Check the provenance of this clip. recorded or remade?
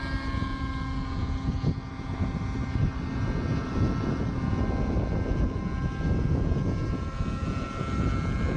recorded